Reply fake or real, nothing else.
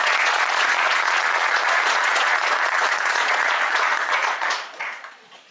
fake